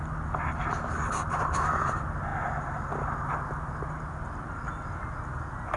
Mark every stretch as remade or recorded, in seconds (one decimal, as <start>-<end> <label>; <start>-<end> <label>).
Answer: 0.0-5.8 recorded